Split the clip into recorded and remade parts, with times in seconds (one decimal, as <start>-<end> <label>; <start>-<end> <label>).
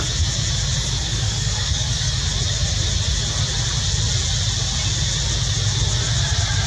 0.0-1.1 recorded; 1.1-2.2 remade; 2.2-6.7 recorded